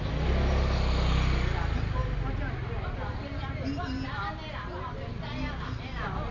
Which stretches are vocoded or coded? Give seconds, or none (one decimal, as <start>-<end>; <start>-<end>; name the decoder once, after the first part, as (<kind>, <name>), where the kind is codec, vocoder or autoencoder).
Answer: none